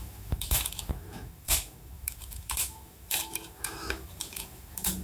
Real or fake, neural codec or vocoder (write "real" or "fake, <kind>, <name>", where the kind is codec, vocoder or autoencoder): fake, autoencoder, DAC-VAE